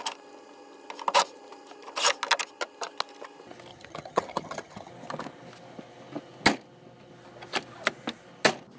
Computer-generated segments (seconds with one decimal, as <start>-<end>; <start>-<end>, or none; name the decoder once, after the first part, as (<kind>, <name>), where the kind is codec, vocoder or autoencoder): 3.7-4.9 (vocoder, HiFi-GAN)